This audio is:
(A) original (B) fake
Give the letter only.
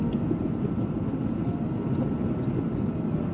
A